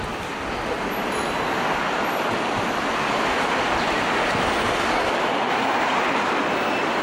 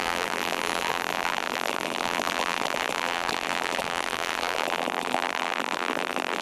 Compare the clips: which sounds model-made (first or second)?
second